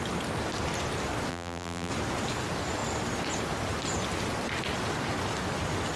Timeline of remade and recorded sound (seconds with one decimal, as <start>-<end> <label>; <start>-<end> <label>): 0.0-1.3 recorded; 1.3-1.9 remade; 1.9-6.0 recorded